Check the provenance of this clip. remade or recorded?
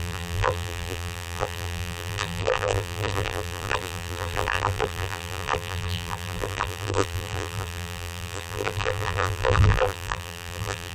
remade